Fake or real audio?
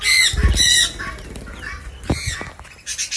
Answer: real